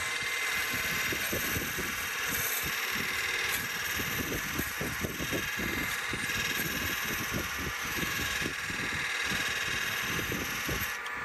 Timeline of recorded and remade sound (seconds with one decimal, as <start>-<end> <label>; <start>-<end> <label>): 0.0-7.8 recorded; 7.8-8.5 remade; 8.5-11.2 recorded